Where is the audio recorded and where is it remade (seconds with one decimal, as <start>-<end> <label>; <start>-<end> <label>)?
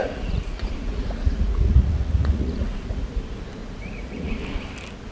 0.0-3.1 remade; 3.1-3.6 recorded; 3.6-4.3 remade; 4.3-5.1 recorded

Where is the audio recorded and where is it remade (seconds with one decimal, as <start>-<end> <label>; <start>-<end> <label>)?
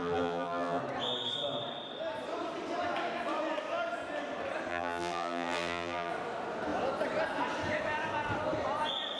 0.0-0.8 remade; 0.8-4.7 recorded; 4.7-6.1 remade; 6.1-9.2 recorded